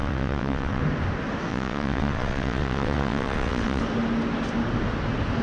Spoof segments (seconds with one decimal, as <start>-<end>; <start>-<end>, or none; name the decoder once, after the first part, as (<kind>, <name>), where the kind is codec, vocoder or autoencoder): 0.0-0.8 (vocoder, WaveNeXt); 1.5-3.8